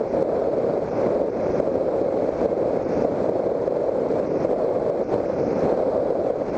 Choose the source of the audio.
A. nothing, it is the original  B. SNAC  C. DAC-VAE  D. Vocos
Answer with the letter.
A